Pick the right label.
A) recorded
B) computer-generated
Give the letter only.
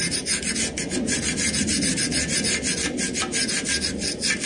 A